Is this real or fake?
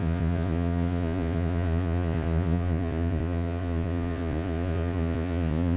fake